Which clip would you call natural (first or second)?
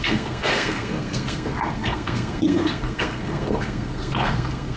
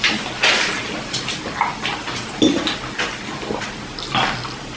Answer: second